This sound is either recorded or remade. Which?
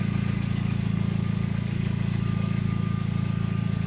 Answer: remade